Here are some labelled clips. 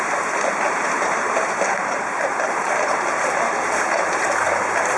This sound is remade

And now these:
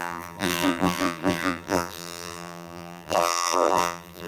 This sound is remade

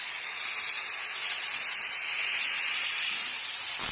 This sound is recorded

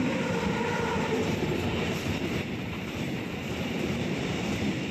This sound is remade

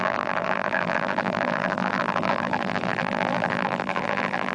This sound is remade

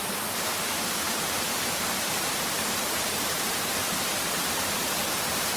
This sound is remade